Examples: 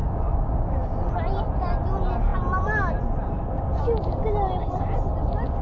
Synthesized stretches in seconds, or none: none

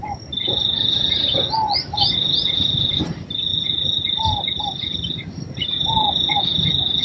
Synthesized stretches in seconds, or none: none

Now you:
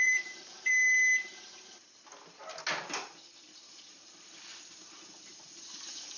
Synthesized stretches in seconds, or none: 0.0-0.7 (vocoder, BigVGAN v2); 2.8-6.2

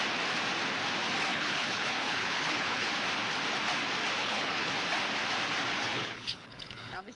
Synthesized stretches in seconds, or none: 1.3-2.9 (codec, HILCodec); 4.2-4.7; 5.7-7.2

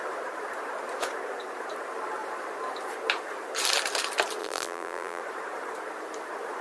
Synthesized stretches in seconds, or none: 4.4-5.2 (vocoder, BigVGAN v2)

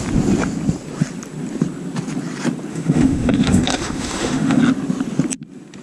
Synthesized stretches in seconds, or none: 2.7-4.6 (autoencoder, DAC-VAE)

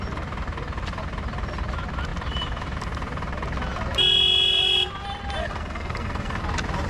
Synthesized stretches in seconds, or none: 5.4-6.4 (codec, SNAC)

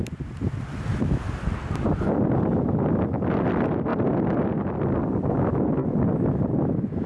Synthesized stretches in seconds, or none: none